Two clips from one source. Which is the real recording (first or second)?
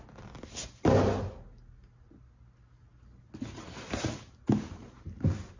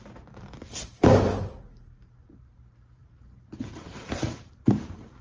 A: first